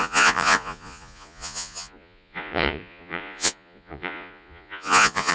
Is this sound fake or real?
fake